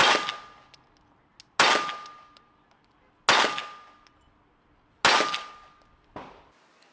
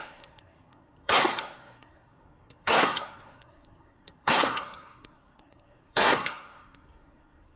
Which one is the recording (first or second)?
first